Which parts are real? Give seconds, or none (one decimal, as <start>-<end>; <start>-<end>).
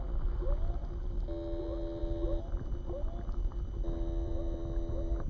0.0-5.3